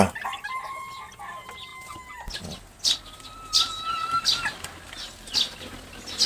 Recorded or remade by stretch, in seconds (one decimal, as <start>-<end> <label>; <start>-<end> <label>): 0.0-6.3 recorded